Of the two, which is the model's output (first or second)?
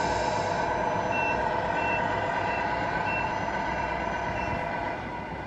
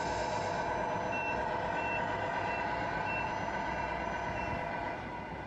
first